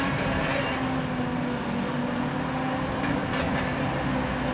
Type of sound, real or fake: real